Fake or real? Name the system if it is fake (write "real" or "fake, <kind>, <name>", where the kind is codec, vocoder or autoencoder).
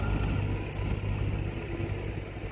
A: real